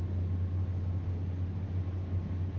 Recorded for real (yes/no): yes